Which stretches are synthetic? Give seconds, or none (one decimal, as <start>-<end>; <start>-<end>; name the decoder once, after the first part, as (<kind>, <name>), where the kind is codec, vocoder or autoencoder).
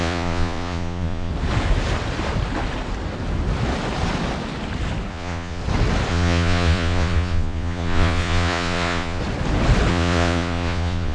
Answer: 0.0-1.3 (vocoder, Vocos); 5.1-5.6; 6.1-9.2; 9.9-11.1